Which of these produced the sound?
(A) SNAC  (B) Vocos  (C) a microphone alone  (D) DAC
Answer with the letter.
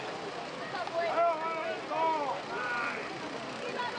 C